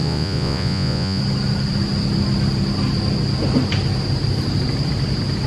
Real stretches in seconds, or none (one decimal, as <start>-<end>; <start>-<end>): 1.2-5.5